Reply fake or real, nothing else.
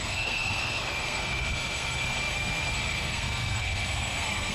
fake